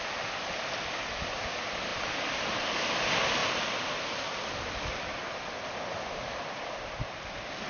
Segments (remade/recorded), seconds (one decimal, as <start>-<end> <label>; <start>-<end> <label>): 0.0-7.7 recorded

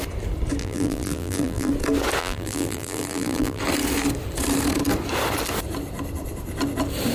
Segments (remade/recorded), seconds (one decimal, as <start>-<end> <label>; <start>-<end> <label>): 0.0-0.6 recorded; 0.6-1.7 remade; 1.7-2.2 recorded; 2.2-3.6 remade; 3.6-7.1 recorded